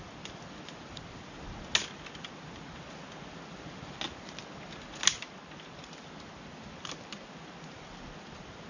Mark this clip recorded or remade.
recorded